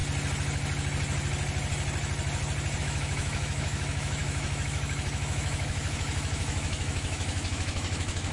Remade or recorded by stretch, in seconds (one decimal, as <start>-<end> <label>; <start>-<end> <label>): 0.0-2.8 recorded; 2.8-8.3 remade